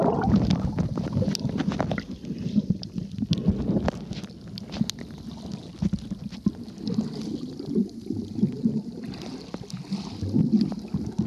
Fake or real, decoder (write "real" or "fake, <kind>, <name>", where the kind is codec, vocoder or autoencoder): real